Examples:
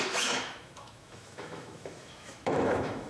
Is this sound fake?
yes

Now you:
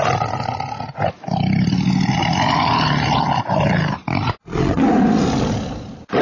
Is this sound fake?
no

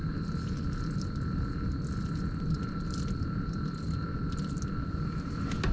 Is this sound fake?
no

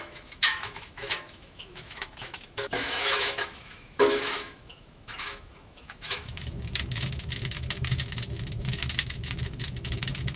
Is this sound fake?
yes